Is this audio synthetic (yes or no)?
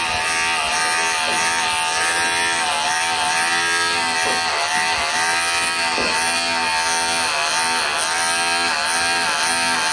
no